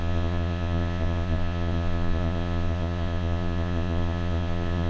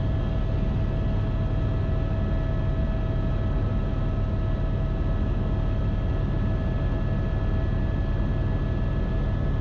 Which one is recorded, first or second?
second